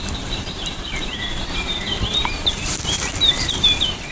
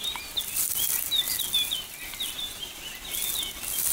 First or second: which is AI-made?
first